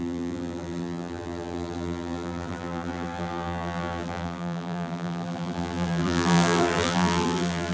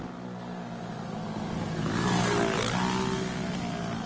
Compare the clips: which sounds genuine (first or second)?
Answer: second